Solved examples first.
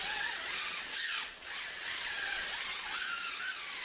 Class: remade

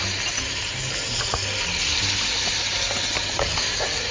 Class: recorded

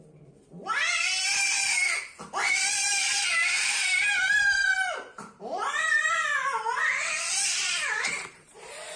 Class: remade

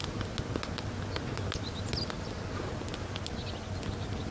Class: recorded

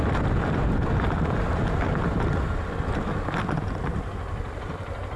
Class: recorded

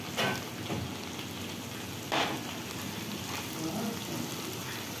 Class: recorded